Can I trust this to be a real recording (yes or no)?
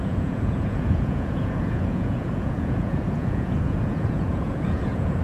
no